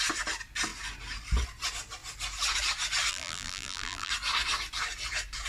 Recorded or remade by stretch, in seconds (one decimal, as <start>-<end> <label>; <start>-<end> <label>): 0.0-3.1 recorded; 3.1-4.1 remade; 4.1-5.5 recorded